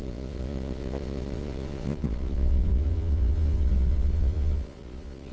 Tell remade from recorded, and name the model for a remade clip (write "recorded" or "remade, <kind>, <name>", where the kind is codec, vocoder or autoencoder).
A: remade, vocoder, Vocos